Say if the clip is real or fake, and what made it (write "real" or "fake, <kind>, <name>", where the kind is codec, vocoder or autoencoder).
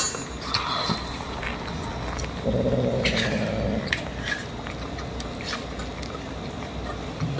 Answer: real